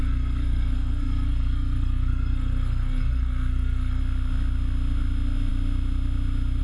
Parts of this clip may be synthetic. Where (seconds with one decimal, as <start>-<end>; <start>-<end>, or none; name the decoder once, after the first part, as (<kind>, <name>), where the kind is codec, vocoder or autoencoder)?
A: 0.0-4.0 (codec, SNAC)